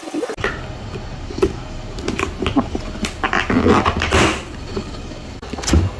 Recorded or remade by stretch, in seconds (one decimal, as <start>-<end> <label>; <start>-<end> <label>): 0.0-1.1 recorded; 1.1-3.0 remade; 3.0-6.0 recorded